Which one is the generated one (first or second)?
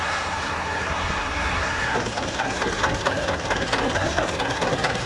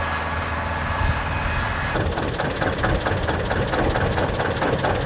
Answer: first